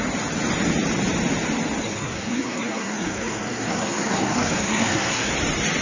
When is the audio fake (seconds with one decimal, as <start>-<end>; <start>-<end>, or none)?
1.8-5.3